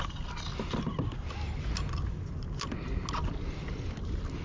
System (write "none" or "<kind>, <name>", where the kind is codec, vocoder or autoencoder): none